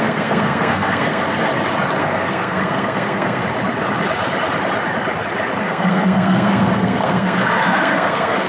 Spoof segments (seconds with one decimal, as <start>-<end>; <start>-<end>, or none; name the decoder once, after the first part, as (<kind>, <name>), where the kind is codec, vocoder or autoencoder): 0.0-1.5 (codec, SNAC); 2.0-3.4; 5.6-8.5